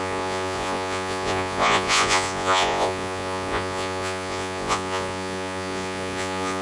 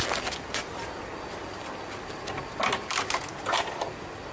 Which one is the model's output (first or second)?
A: first